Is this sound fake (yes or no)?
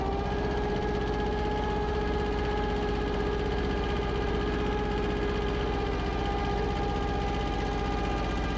no